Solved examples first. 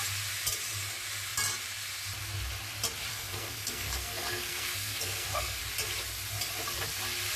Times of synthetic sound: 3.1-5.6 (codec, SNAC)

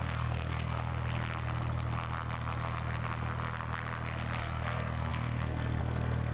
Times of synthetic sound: 0.0-0.9 (codec, SNAC); 4.4-6.3

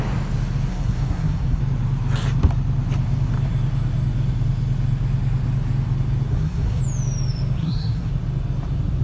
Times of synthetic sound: 0.7-1.6 (codec, SNAC); 6.3-6.8; 7.6-8.1

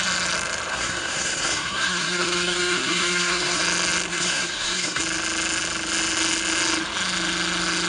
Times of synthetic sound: 0.7-3.6 (codec, SNAC); 4.1-5.0